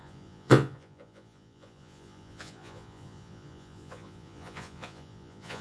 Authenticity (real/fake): fake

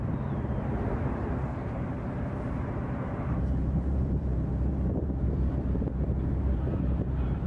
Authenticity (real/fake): fake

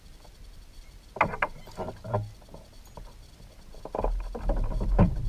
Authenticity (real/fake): real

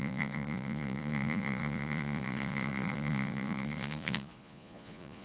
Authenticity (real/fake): fake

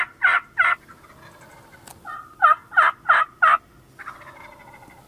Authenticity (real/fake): real